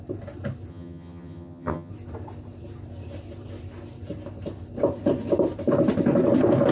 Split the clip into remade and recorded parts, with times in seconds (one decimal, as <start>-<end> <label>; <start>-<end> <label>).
0.0-0.7 recorded; 0.7-1.9 remade; 1.9-6.7 recorded

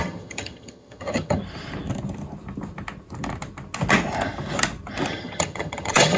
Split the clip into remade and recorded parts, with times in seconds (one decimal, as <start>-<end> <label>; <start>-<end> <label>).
0.0-1.4 remade; 1.4-5.1 recorded; 5.1-6.2 remade